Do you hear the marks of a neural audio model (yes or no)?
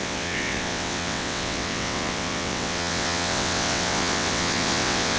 yes